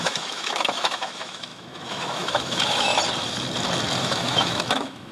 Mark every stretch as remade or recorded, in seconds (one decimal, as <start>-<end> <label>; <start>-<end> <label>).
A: 0.0-2.9 remade; 2.9-4.0 recorded; 4.0-5.1 remade